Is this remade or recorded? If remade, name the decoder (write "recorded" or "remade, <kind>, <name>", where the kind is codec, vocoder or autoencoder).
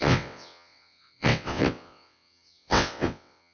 remade, vocoder, WaveNeXt